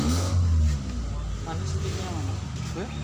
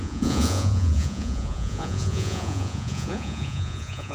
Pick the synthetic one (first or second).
second